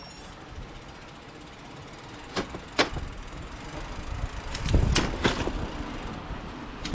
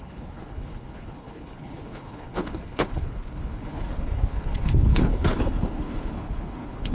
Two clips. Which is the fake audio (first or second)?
second